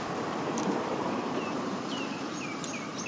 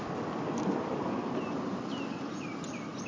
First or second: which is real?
second